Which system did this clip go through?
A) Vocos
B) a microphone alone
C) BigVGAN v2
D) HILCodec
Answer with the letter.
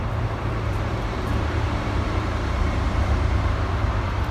C